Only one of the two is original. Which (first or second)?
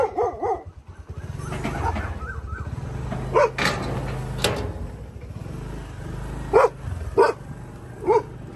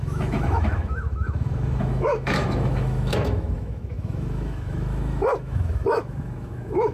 first